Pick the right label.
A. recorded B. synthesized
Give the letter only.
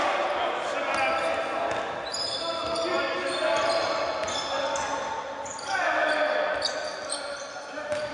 A